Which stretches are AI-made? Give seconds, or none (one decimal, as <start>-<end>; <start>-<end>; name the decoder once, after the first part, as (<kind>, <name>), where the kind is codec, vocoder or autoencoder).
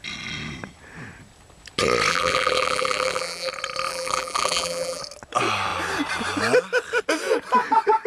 2.1-3.5 (vocoder, BigVGAN v2); 3.9-5.0